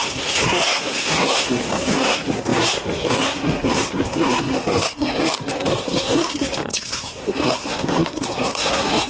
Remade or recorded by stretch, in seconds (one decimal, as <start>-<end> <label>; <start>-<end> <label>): 0.0-9.1 remade